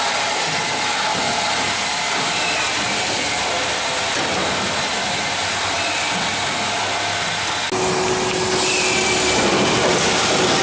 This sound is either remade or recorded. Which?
recorded